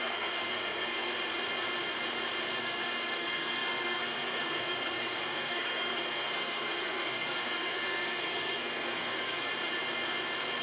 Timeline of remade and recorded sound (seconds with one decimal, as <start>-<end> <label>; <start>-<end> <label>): 0.0-1.1 remade; 1.1-2.6 recorded; 2.6-9.5 remade; 9.5-10.6 recorded